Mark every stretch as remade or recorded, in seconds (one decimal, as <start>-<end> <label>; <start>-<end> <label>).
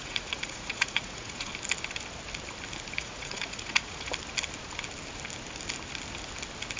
0.0-1.5 remade; 1.5-3.0 recorded; 3.0-4.1 remade; 4.1-6.8 recorded